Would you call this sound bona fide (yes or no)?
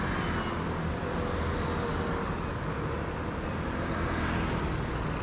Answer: yes